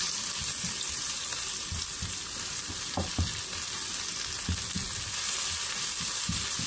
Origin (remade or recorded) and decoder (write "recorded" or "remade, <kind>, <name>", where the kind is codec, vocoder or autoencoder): recorded